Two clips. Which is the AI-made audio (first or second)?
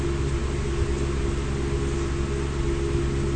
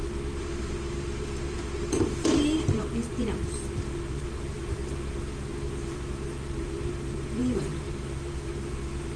second